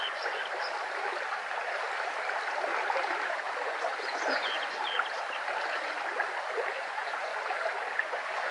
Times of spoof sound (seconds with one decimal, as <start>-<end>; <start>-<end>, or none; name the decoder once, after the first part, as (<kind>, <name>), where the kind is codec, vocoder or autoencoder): 0.0-0.4 (vocoder, Vocos); 3.6-4.8; 6.8-7.3; 8.0-8.5